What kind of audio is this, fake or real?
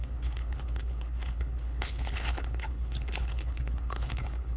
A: fake